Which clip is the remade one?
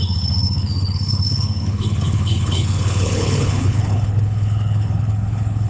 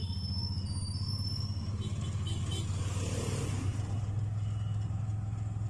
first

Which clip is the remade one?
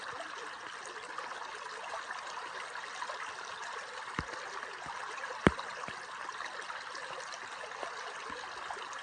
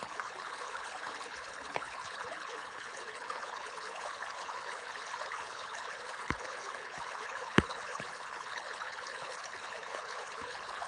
second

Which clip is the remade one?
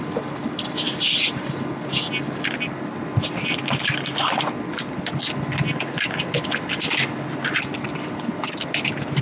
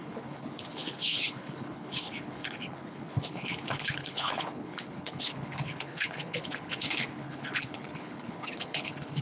second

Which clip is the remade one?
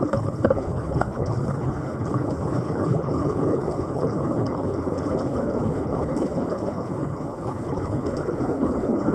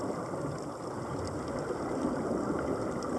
first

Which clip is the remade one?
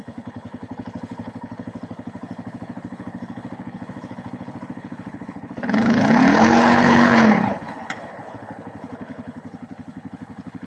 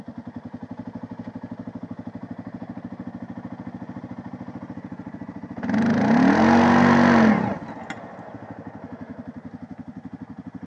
first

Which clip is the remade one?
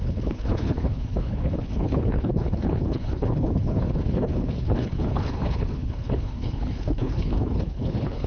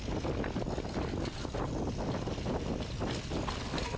first